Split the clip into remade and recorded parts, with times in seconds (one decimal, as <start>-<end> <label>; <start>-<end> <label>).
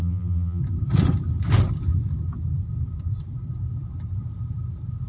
0.0-0.6 remade; 0.6-5.1 recorded